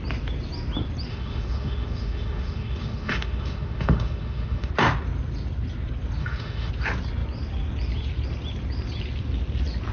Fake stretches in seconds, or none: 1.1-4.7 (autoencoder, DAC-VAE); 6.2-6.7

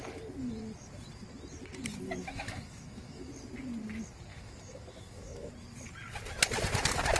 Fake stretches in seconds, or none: 2.2-3.3 (autoencoder, DAC-VAE); 4.3-5.5

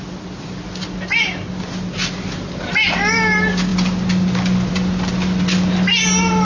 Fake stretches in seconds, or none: none

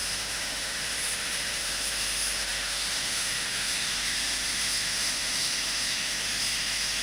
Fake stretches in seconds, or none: 0.0-7.0 (autoencoder, DAC-VAE)

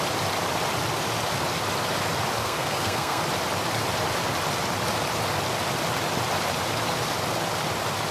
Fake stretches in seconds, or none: 2.4-3.2 (codec, SNAC)

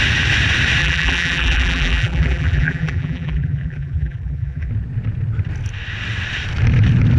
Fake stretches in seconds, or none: 0.8-4.7 (vocoder, BigVGAN v2)

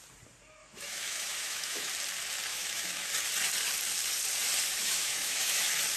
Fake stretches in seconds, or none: 0.6-1.9 (autoencoder, DAC-VAE); 2.5-3.1; 4.8-5.6